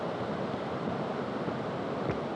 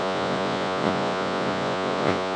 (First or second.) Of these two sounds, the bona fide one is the first